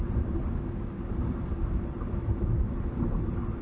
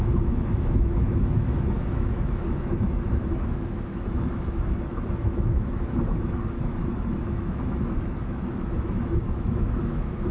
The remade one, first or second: second